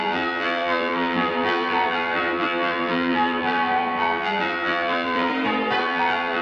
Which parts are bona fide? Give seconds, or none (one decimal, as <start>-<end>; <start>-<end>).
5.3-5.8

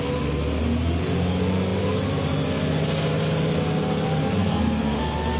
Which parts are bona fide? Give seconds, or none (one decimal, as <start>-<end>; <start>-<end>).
0.0-4.4; 5.0-5.4

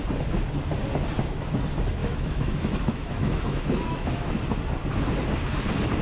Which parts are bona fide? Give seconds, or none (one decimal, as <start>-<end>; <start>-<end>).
0.0-2.0; 4.3-6.0

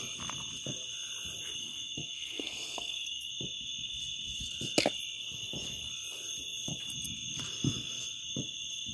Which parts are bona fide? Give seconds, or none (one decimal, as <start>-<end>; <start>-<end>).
0.0-1.6; 3.3-8.9

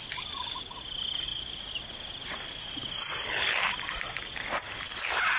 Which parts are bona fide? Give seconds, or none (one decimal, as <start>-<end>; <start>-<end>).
0.0-5.4

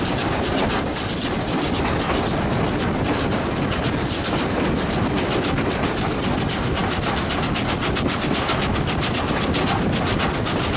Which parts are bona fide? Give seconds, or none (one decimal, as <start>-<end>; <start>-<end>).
0.0-10.8